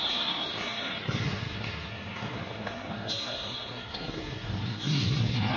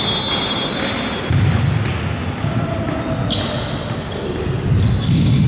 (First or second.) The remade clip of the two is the first